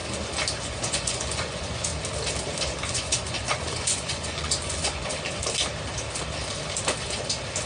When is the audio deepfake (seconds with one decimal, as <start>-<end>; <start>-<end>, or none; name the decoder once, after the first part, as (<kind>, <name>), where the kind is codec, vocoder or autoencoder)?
0.6-1.9 (vocoder, Vocos); 2.9-5.1

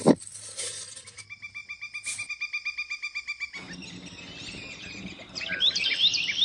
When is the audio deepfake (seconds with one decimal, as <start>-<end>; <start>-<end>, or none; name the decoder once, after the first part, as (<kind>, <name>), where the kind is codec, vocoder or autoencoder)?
none